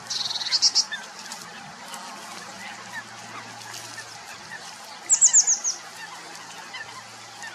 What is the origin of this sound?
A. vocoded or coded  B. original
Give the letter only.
B